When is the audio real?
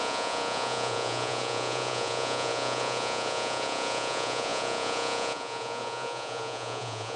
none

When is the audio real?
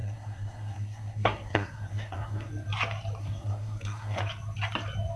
2.5-3.2; 4.2-5.2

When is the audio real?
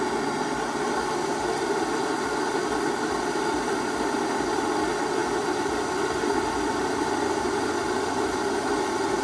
0.0-9.2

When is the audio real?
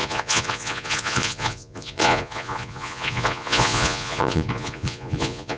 none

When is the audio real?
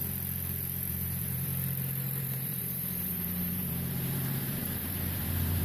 0.0-0.9; 1.5-2.2